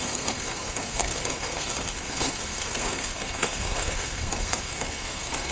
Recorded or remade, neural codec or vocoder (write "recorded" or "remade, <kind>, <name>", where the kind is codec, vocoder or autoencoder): remade, codec, SNAC